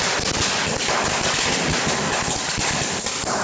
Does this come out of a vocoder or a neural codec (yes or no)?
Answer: no